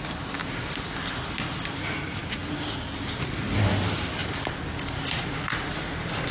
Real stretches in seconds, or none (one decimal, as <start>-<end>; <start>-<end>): 0.0-6.3